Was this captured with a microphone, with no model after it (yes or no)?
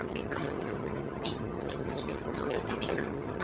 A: no